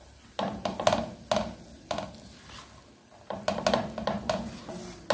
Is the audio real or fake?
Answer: real